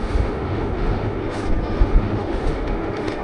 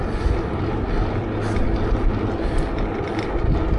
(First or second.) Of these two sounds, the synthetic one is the first